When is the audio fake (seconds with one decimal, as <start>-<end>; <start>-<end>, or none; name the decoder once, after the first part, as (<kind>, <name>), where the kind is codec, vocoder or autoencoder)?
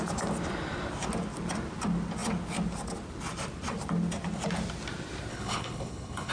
5.3-6.3 (codec, HILCodec)